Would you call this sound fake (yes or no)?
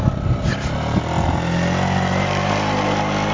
no